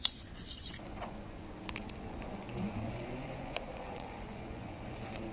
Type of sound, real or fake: fake